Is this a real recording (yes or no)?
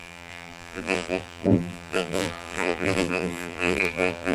no